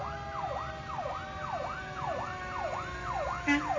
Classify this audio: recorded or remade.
recorded